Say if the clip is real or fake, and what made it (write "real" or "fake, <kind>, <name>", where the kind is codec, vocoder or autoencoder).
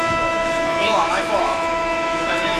fake, autoencoder, DAC-VAE